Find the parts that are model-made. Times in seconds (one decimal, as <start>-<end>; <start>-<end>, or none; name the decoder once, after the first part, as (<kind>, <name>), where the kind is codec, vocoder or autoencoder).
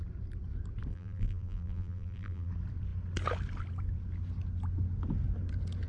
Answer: 0.9-2.5 (vocoder, BigVGAN v2)